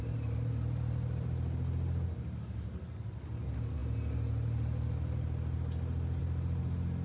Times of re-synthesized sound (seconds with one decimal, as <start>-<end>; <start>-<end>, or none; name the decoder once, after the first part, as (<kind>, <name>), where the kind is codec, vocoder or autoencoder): none